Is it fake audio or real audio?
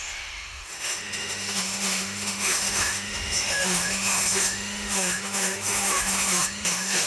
fake